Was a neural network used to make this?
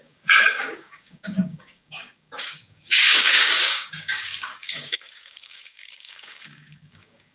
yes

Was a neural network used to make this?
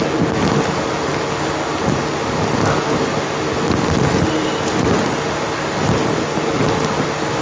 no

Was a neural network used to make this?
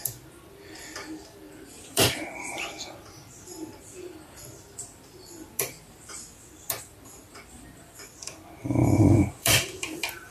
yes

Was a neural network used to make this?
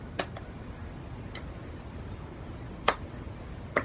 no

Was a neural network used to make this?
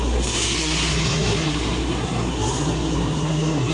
yes